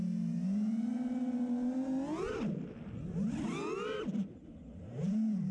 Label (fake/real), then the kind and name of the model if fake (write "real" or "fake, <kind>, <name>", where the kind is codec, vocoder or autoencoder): real